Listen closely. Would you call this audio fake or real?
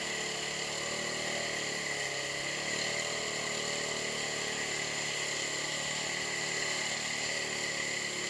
real